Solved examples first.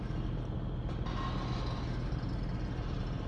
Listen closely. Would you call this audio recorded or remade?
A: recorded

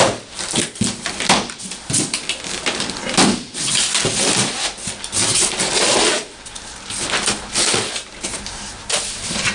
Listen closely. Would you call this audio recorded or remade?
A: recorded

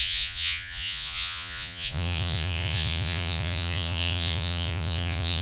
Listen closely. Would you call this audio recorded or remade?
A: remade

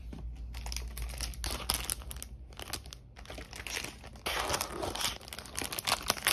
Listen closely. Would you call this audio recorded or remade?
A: recorded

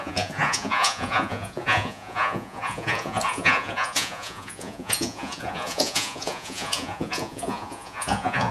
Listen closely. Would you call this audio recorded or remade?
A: remade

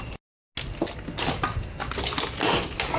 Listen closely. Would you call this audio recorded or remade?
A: recorded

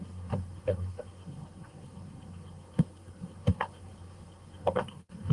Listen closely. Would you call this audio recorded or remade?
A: remade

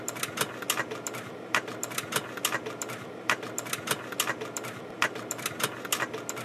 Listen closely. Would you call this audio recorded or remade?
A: recorded